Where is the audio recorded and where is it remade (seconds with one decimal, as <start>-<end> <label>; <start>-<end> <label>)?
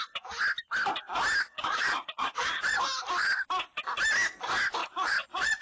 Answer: 0.0-1.5 recorded; 1.5-2.8 remade; 2.8-4.8 recorded; 4.8-5.6 remade